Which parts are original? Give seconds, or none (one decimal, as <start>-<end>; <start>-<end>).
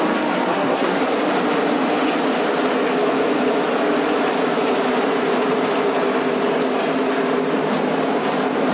0.0-0.5; 1.0-8.7